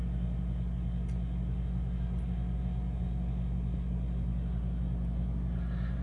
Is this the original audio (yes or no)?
yes